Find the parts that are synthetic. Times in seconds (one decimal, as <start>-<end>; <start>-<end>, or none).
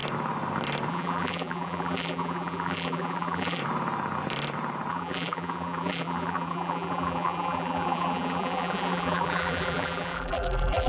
0.9-3.6; 4.9-10.9